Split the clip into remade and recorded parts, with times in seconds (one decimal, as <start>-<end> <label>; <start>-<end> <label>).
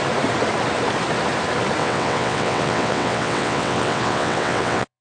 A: 0.0-1.8 recorded; 1.8-5.0 remade